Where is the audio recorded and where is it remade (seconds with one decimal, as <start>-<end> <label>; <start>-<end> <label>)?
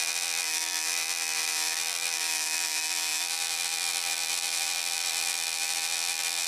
0.0-6.5 remade